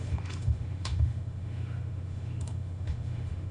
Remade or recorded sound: remade